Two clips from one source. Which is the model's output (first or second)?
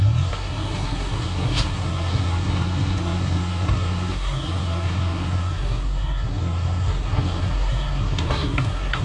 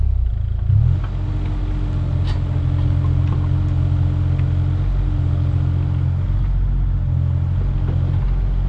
first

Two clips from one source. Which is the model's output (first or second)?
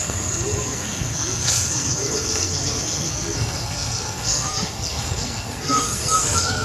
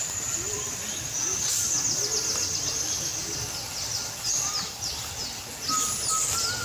first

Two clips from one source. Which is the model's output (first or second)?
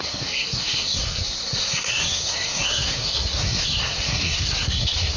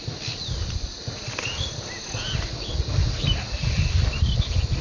first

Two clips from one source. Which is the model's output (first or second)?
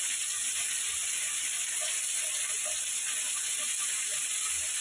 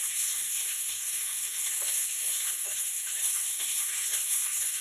second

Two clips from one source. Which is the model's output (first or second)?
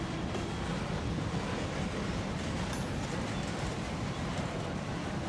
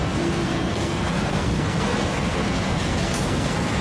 second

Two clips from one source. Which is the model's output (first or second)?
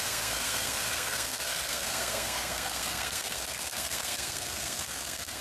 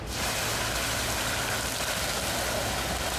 first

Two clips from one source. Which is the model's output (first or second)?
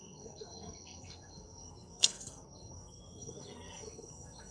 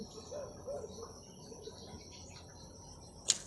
first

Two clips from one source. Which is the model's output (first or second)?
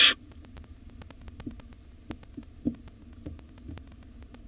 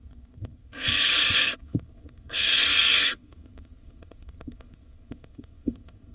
second